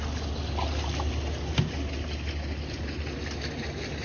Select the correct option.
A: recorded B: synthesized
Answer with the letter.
A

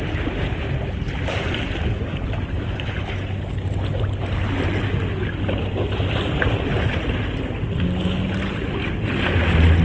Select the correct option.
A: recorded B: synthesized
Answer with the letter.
A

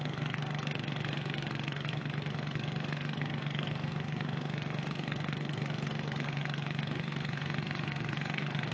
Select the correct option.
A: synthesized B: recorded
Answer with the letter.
A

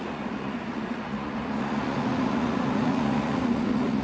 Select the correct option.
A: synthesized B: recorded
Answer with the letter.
A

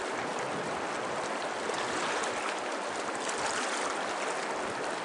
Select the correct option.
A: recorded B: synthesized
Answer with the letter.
A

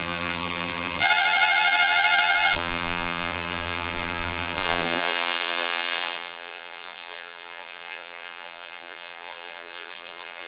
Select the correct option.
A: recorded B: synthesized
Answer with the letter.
B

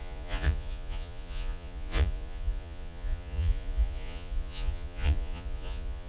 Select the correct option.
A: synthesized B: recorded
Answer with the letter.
A